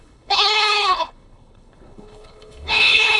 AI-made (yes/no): yes